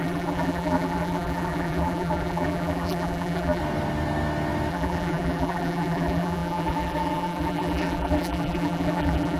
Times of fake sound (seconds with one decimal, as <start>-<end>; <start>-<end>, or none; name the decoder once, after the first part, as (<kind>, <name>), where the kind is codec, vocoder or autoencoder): 0.0-3.6 (vocoder, BigVGAN v2); 4.7-9.4